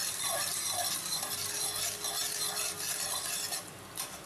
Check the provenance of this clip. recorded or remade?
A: recorded